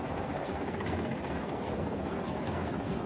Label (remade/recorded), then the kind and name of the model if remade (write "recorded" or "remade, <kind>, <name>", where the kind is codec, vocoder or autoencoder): remade, codec, SNAC